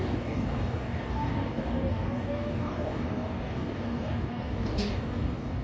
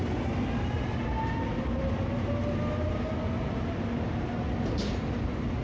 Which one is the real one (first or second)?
second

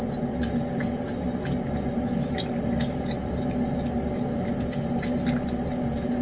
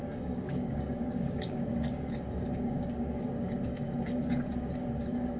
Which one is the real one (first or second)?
first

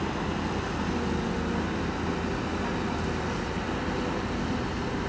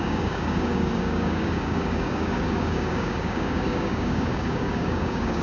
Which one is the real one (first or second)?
first